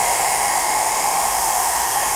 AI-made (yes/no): yes